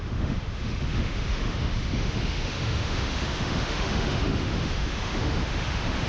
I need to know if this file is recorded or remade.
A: remade